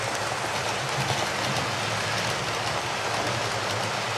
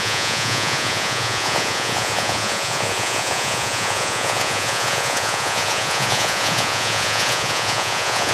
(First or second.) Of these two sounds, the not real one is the second